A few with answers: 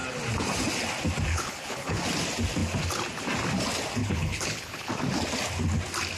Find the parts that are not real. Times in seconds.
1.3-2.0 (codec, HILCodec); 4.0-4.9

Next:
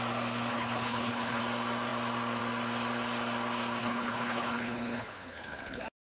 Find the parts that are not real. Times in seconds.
0.5-1.4 (codec, HILCodec); 3.8-5.8

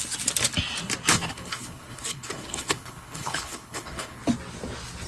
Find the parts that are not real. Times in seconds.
1.1-4.2 (codec, HILCodec)

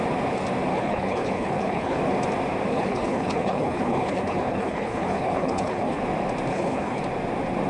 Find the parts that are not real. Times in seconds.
0.7-2.0 (codec, HILCodec); 2.7-6.0; 6.5-7.0